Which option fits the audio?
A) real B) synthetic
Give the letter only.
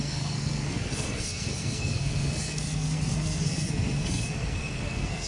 B